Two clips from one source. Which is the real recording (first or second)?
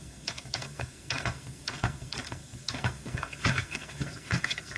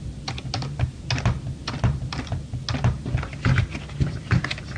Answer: second